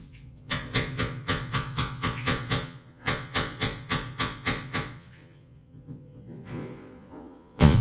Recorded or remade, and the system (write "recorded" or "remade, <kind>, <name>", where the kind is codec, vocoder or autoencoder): remade, vocoder, Vocos